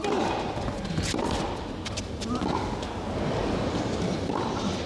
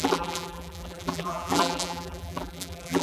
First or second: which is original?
first